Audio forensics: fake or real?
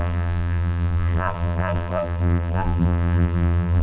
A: fake